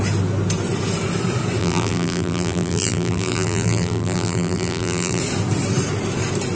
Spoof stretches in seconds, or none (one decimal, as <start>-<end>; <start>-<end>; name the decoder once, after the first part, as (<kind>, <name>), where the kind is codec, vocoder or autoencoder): 1.6-5.2 (vocoder, BigVGAN v2)